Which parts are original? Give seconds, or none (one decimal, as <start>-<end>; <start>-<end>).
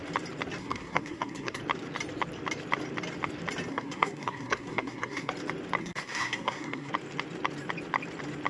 0.0-0.6; 1.6-3.7; 5.3-5.8; 6.9-8.5